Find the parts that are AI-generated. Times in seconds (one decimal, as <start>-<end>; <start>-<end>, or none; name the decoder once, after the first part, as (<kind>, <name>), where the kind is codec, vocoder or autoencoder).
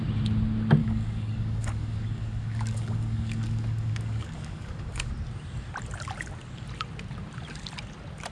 0.8-5.1 (codec, DAC)